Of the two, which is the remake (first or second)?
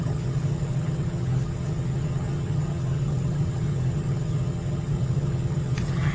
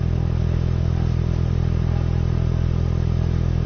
first